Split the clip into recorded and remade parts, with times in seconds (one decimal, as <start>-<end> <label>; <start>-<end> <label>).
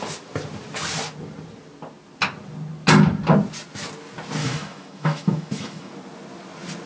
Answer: 0.0-4.4 recorded; 4.4-5.9 remade; 5.9-6.9 recorded